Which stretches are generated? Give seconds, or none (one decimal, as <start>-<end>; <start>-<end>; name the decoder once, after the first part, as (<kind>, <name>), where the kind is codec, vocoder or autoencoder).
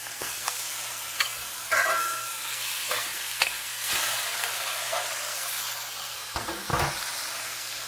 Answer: 0.0-6.7 (codec, SNAC); 7.3-7.9